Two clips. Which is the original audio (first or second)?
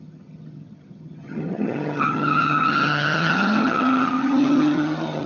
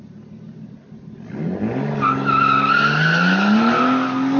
second